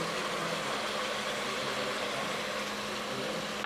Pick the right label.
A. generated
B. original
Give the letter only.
B